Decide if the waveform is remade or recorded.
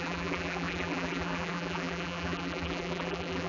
remade